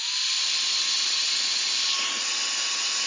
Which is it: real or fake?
real